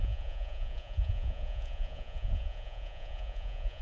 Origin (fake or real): fake